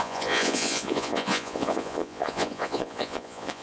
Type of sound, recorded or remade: remade